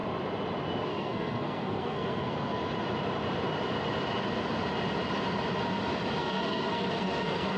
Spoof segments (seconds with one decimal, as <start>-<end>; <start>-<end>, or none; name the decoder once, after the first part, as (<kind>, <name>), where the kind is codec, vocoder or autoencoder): 0.9-2.6 (codec, SNAC); 6.2-7.6

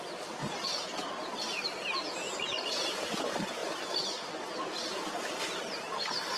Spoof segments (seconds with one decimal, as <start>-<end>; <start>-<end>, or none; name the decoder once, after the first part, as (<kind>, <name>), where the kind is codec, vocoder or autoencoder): 0.4-1.1 (vocoder, BigVGAN v2); 3.6-4.7

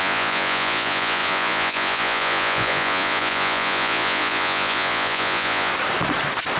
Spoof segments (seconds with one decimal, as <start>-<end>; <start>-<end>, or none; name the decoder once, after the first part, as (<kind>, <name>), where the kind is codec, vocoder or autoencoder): 0.0-5.7 (vocoder, Vocos)

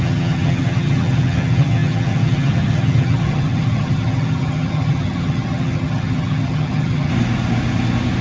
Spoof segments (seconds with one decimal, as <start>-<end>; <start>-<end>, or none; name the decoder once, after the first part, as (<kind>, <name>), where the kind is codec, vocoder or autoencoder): 0.0-7.1 (vocoder, HiFi-GAN)

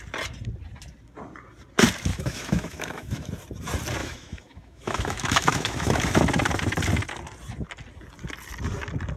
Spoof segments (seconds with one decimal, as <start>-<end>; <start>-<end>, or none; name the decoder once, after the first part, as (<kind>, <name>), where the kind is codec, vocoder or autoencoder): 2.1-3.3 (autoencoder, DAC-VAE); 4.0-6.2

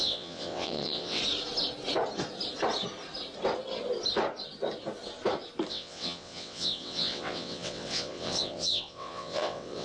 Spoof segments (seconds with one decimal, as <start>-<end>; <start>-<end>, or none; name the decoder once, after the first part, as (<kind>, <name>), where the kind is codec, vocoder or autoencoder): 0.0-1.2 (vocoder, WaveNeXt); 5.7-9.8